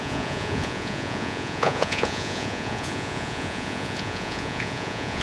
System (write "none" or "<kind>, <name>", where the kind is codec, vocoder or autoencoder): vocoder, Vocos